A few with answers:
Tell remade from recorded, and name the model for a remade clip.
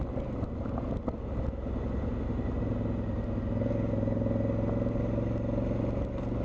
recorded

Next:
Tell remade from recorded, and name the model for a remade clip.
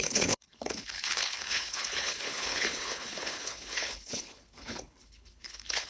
remade, codec, HILCodec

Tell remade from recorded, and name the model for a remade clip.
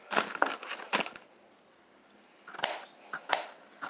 recorded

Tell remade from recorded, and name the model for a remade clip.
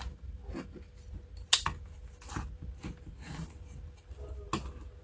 recorded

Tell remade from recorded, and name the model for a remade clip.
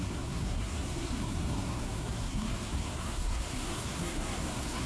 remade, codec, SNAC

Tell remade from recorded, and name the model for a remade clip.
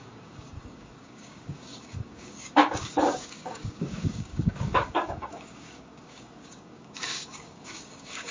remade, codec, DAC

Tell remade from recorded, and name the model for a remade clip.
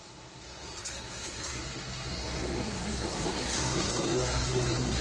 remade, codec, SNAC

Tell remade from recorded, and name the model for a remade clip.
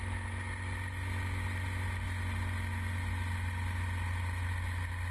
recorded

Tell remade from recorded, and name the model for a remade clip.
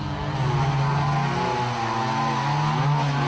recorded